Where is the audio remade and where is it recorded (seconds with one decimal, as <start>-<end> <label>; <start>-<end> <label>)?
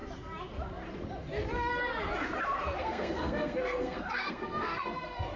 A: 0.0-2.8 recorded; 2.8-5.4 remade